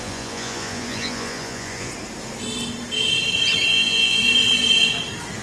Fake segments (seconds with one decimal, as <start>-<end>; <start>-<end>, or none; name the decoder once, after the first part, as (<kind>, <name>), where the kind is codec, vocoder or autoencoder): 0.0-1.9 (vocoder, Vocos); 3.7-4.2